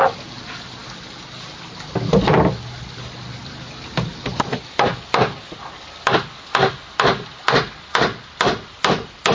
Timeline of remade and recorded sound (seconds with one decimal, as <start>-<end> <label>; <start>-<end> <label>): 0.0-9.3 recorded